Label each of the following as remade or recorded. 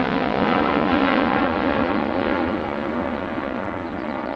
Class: remade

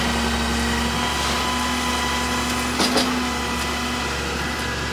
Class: recorded